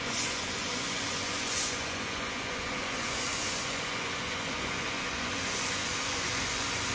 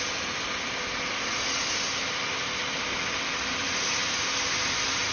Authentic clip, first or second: second